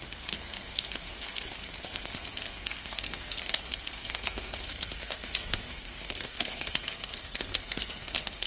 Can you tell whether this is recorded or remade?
remade